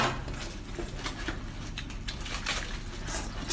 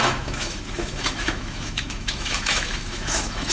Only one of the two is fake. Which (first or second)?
second